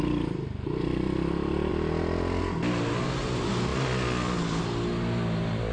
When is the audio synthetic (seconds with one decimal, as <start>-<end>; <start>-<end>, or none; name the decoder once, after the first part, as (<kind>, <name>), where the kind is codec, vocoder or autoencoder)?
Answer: 1.7-2.4 (vocoder, BigVGAN v2)